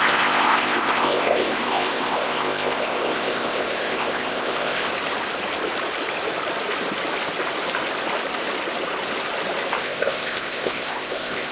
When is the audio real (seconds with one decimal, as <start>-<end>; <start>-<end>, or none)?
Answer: 4.9-9.8

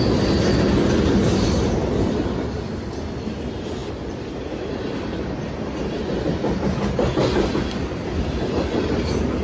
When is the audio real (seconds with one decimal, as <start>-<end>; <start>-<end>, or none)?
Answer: 0.0-9.4

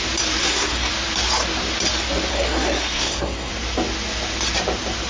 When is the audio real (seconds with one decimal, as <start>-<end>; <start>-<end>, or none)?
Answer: 0.0-0.4; 0.9-2.3; 3.5-5.1

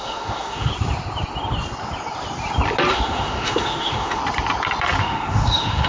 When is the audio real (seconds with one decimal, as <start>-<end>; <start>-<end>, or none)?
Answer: 0.7-2.9; 4.2-5.0